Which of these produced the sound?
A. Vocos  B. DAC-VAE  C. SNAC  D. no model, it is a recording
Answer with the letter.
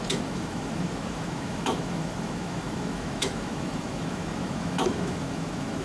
B